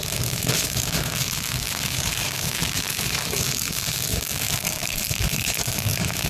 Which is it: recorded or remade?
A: remade